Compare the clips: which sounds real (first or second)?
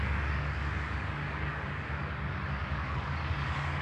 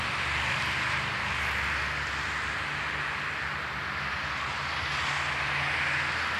second